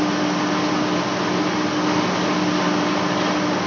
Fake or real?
real